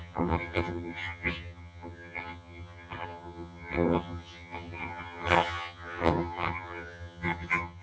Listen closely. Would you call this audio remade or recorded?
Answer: remade